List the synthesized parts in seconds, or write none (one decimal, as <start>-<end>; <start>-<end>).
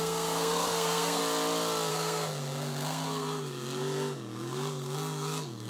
0.0-1.2; 1.9-5.7